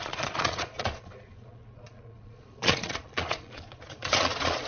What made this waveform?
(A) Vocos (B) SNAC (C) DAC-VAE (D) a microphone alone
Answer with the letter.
A